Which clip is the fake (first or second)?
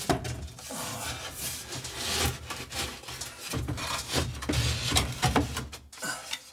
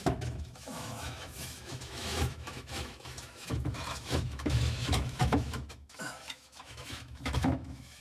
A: second